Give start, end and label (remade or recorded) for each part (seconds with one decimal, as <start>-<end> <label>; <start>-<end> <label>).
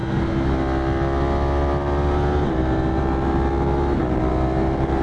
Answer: 0.0-5.0 recorded